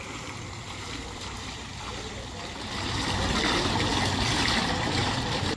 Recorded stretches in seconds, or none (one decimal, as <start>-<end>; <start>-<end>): 1.7-5.0